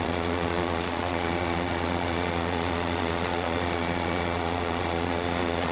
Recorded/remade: remade